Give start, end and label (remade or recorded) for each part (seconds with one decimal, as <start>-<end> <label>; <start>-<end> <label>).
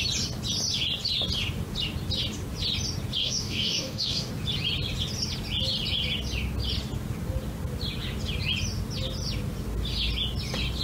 0.0-3.2 recorded; 3.2-4.3 remade; 4.3-10.8 recorded